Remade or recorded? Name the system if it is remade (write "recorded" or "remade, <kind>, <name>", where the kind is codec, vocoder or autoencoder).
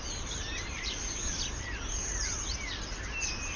remade, vocoder, BigVGAN v2